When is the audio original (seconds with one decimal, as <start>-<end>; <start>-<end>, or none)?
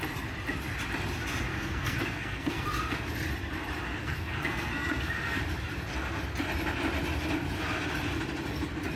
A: 0.0-1.5; 3.1-4.0; 5.4-9.0